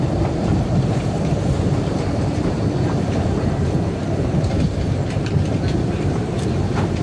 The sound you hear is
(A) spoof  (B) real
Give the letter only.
A